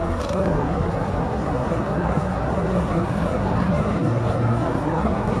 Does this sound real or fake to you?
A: fake